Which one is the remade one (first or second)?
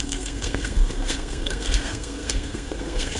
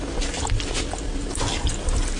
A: first